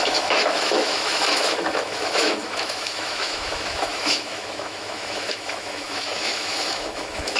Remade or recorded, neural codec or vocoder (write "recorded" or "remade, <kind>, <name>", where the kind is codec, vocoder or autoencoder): remade, autoencoder, DAC-VAE